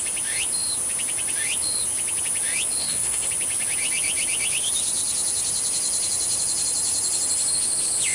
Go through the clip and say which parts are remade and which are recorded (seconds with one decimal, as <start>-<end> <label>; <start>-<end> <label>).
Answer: 0.0-2.8 recorded; 2.8-3.3 remade; 3.3-8.1 recorded